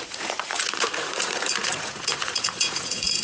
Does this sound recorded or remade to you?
remade